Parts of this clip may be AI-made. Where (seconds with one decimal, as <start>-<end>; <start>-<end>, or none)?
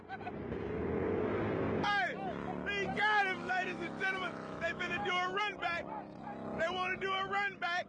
3.4-5.4